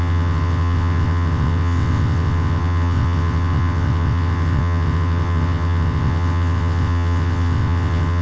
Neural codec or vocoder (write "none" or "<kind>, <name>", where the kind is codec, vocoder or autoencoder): vocoder, WaveNeXt